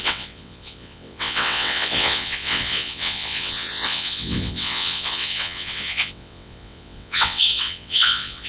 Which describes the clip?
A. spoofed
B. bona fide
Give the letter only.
A